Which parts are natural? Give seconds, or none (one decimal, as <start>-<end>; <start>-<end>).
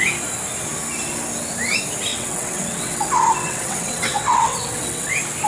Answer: 0.0-2.1; 5.1-5.5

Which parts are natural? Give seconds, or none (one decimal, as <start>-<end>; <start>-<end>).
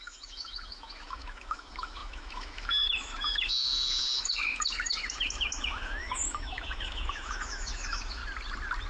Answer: 8.2-8.9